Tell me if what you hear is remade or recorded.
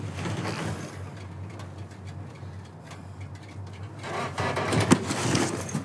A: recorded